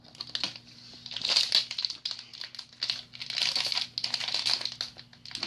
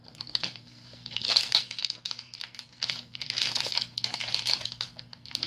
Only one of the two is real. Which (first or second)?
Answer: first